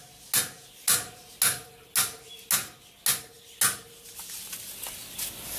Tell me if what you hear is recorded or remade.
recorded